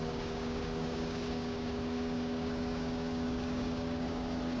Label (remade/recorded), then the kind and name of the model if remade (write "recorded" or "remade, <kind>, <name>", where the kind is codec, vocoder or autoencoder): remade, codec, DAC